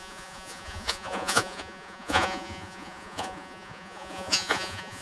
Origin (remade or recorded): remade